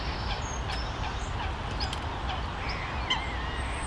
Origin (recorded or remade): recorded